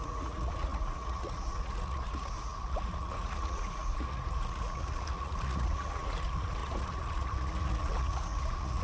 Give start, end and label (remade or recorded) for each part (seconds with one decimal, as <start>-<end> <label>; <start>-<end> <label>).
0.0-8.8 remade